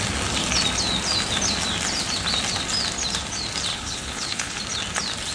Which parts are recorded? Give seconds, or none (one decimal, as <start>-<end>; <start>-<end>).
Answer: 0.0-3.7; 4.6-5.3